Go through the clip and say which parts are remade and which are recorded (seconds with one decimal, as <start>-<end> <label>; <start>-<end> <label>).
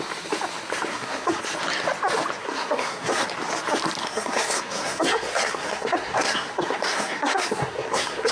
0.0-0.9 recorded; 0.9-1.4 remade; 1.4-2.4 recorded; 2.4-3.3 remade; 3.3-4.0 recorded; 4.0-8.3 remade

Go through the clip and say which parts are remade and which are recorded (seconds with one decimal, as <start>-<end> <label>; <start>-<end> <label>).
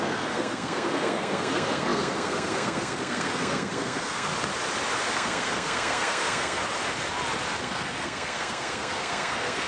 0.0-4.3 remade; 4.3-5.1 recorded; 5.1-6.6 remade; 6.6-7.6 recorded; 7.6-9.7 remade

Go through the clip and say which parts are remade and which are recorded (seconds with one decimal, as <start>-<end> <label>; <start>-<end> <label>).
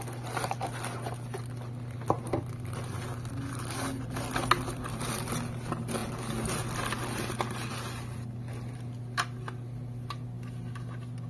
0.0-11.3 recorded